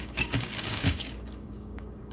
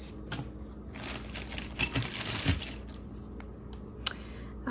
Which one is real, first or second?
second